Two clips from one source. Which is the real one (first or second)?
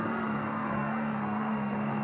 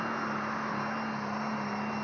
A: second